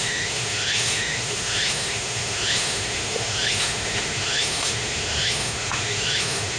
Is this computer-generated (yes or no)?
yes